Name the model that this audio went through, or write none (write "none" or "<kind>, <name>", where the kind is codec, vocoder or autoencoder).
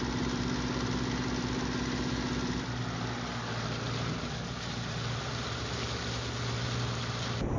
none